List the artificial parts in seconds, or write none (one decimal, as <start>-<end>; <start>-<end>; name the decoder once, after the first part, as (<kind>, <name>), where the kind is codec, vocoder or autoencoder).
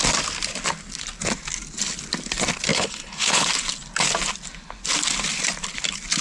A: 2.7-3.5 (codec, HILCodec)